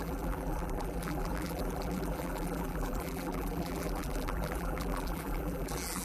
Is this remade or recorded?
remade